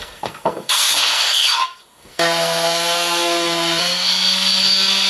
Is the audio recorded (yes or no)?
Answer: no